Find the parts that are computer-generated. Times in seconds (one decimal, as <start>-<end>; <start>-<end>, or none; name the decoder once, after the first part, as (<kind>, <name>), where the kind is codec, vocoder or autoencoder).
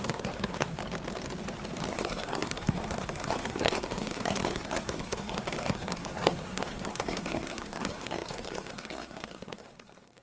0.0-0.8 (codec, SNAC); 1.9-10.2